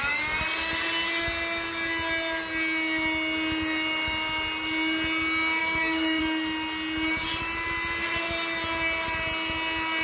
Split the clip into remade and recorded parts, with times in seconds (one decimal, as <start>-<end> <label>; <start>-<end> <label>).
0.0-5.6 recorded; 5.6-6.2 remade; 6.2-10.0 recorded